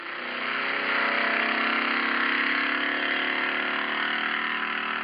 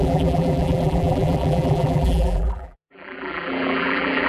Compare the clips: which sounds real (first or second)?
first